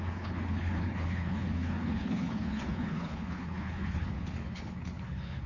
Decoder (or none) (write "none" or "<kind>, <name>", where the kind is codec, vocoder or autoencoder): codec, HILCodec